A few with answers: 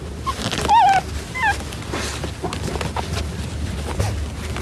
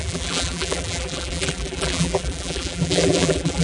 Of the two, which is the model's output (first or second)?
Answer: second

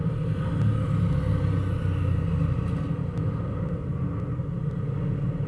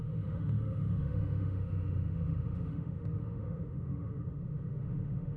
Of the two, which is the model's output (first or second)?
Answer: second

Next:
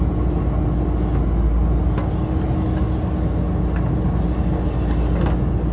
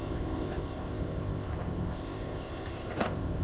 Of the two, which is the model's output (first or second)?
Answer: second